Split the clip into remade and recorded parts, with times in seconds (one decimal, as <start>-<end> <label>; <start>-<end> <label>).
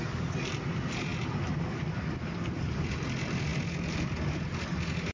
0.0-5.1 recorded